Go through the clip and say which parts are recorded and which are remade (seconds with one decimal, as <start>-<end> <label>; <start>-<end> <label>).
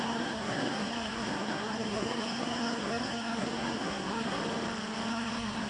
0.0-4.4 remade; 4.4-5.1 recorded; 5.1-5.7 remade